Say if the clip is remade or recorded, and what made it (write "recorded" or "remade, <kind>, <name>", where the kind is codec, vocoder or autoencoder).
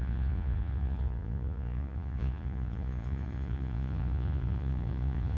remade, vocoder, Vocos